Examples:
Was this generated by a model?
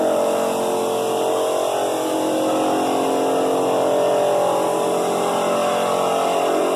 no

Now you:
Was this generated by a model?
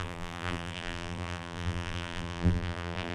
yes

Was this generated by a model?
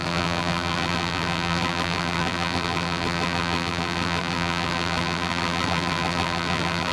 yes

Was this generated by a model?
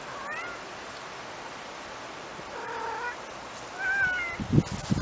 no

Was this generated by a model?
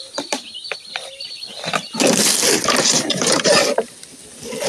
no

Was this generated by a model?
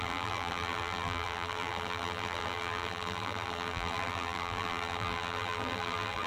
yes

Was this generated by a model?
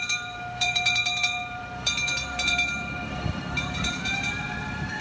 yes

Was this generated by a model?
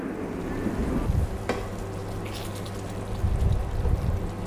no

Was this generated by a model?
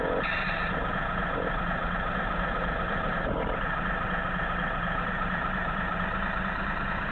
yes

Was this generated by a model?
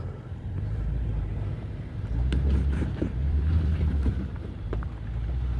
yes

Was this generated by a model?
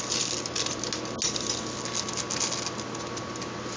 no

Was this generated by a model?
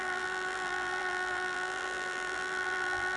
yes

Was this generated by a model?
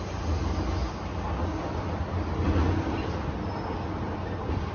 no